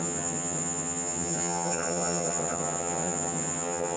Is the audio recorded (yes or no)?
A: no